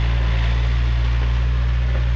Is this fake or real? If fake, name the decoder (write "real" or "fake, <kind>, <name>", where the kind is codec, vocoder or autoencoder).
real